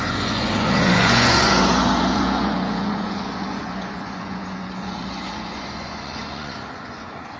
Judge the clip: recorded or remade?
remade